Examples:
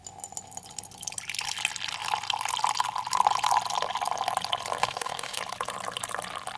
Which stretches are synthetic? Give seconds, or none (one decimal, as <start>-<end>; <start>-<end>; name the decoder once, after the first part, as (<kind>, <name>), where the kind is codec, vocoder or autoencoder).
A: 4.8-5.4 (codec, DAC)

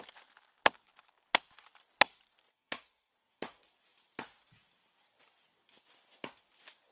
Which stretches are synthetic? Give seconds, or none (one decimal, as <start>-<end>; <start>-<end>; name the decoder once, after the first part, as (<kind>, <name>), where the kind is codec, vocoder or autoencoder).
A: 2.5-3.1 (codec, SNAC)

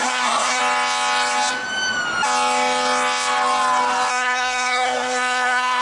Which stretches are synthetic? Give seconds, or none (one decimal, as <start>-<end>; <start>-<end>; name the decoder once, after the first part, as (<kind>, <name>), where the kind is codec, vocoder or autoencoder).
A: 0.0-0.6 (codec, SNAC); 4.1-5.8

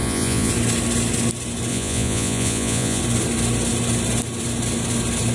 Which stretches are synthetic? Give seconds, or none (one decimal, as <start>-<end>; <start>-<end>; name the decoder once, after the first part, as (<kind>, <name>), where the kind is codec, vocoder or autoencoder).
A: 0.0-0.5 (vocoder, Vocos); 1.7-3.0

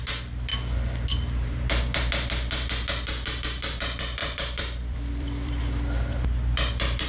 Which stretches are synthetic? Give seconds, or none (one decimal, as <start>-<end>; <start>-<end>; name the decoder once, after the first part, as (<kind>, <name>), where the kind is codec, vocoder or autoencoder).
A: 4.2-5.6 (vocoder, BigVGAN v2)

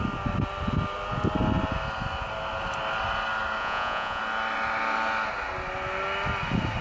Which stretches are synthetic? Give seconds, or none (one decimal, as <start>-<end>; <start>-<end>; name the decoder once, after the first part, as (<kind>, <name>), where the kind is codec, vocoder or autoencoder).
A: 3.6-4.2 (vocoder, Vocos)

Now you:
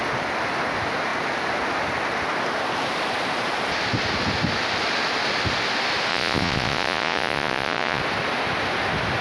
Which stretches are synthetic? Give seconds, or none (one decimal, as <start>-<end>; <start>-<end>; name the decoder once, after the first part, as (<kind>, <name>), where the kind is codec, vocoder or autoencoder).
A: 6.1-8.0 (vocoder, Vocos)